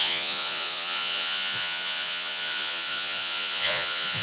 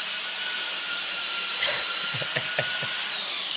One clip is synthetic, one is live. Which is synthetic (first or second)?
first